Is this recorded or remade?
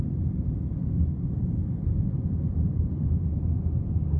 recorded